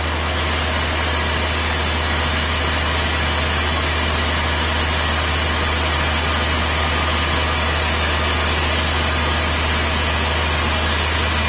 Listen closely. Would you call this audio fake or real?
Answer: real